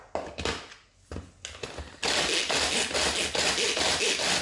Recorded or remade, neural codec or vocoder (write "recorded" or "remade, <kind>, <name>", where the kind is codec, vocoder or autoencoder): recorded